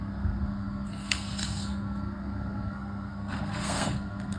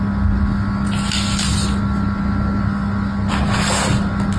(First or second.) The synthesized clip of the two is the first